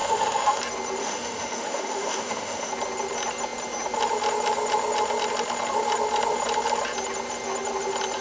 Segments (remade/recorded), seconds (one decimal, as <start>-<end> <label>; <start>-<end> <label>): 0.0-0.6 remade; 0.6-1.0 recorded; 1.0-2.7 remade; 2.7-8.2 recorded